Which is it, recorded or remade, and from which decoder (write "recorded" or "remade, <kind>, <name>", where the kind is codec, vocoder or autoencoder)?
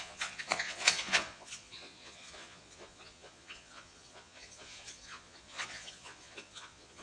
remade, vocoder, Vocos